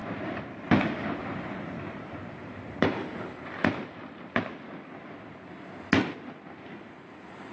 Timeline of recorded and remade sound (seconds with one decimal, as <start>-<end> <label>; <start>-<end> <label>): 0.0-4.5 remade; 4.5-7.5 recorded